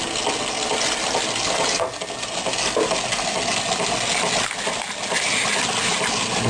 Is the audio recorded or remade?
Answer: recorded